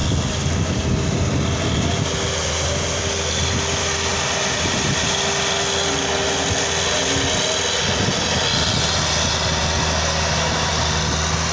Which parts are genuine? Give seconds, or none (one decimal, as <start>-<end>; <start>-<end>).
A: 0.0-11.5

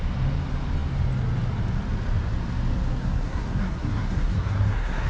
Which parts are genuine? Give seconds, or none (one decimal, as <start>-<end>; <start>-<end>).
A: 0.0-2.9